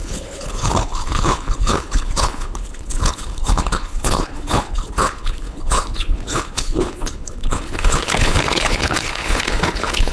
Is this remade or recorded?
remade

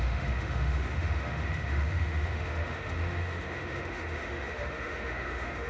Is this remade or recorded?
remade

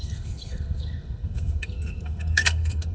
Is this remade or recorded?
remade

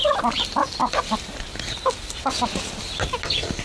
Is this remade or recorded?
recorded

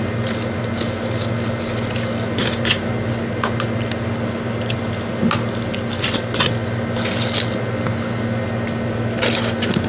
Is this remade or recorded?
recorded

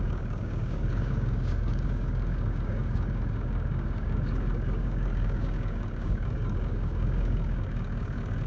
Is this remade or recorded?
remade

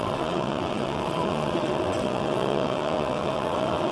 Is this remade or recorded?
remade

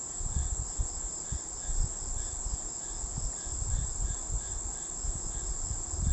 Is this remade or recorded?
recorded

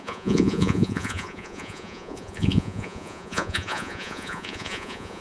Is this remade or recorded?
remade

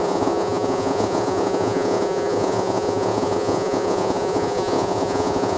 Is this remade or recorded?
remade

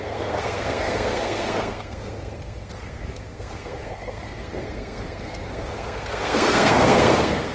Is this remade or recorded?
remade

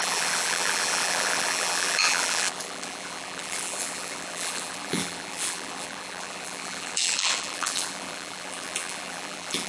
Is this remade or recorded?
remade